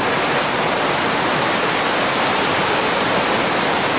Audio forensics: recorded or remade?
recorded